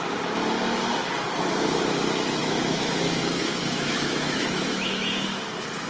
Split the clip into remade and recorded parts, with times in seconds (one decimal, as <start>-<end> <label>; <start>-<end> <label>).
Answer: 0.0-2.4 recorded; 2.4-5.4 remade; 5.4-5.9 recorded